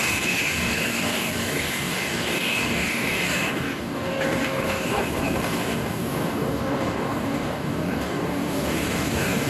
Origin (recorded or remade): remade